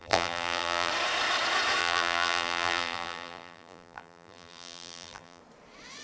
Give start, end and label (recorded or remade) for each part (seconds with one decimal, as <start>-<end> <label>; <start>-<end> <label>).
0.0-0.9 remade; 0.9-1.8 recorded; 1.8-5.4 remade; 5.4-6.0 recorded